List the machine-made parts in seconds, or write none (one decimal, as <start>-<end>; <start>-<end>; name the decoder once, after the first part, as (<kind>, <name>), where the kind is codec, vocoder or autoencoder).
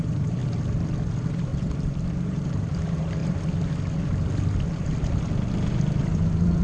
0.0-0.4 (vocoder, BigVGAN v2); 1.1-1.5; 2.2-3.2; 6.0-6.6